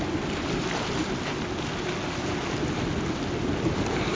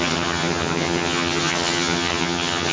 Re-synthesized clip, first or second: second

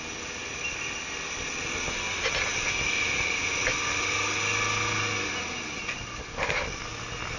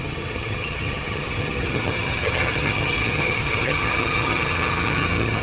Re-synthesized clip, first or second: second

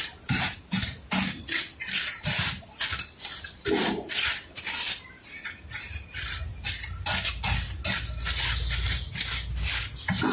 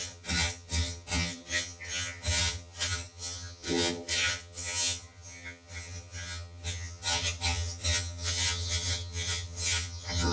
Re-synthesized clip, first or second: second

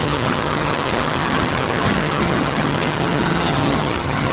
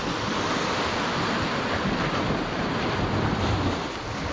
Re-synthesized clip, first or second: first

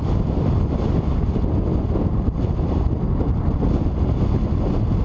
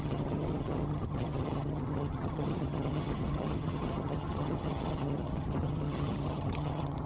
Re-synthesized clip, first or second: second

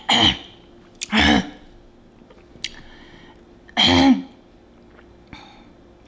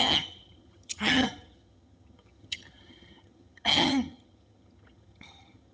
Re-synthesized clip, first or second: second